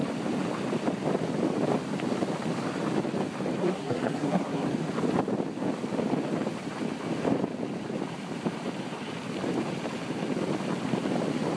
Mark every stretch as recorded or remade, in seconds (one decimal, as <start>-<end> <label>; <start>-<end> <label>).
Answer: 0.0-3.6 recorded; 3.6-4.7 remade; 4.7-11.6 recorded